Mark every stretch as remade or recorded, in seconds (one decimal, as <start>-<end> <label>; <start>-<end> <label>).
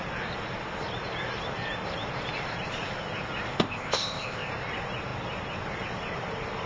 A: 0.0-3.5 recorded; 3.5-4.5 remade; 4.5-6.7 recorded